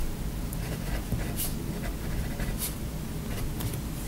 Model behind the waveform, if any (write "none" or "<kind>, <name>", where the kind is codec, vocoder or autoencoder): none